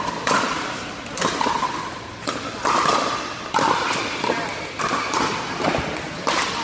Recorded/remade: recorded